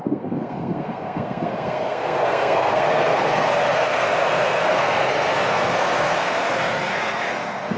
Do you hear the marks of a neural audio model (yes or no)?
yes